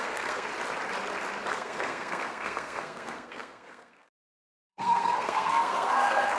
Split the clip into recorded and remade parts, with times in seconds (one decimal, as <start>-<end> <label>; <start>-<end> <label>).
0.0-0.5 remade; 0.5-1.5 recorded; 1.5-6.4 remade